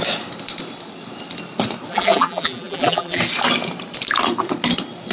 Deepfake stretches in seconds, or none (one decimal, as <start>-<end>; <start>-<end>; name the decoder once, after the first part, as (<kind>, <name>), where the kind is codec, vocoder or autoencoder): 1.9-3.2 (vocoder, BigVGAN v2)